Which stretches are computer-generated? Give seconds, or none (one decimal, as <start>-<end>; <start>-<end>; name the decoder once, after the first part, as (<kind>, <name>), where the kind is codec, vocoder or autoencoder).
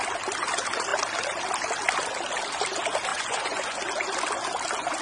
3.1-3.8 (vocoder, Vocos)